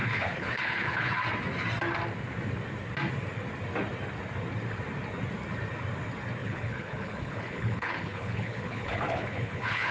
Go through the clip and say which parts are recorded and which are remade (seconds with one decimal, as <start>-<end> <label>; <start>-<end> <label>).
0.0-1.1 remade; 1.1-6.4 recorded; 6.4-9.9 remade